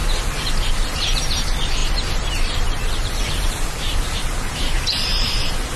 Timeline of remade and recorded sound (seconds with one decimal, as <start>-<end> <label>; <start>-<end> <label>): 0.0-0.7 recorded; 0.7-5.8 remade